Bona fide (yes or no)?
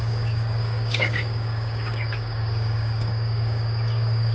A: no